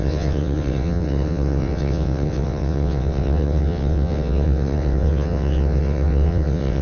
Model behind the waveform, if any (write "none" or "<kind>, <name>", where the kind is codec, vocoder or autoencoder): vocoder, WaveNeXt